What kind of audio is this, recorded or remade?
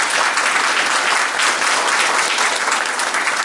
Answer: recorded